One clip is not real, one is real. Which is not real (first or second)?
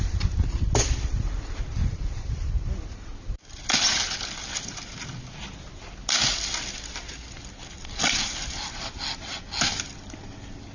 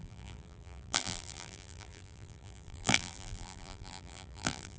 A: second